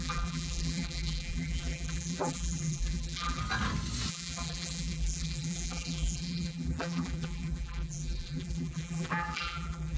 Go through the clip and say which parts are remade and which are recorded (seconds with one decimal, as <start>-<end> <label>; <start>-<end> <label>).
0.0-3.4 remade; 3.4-4.1 recorded; 4.1-10.0 remade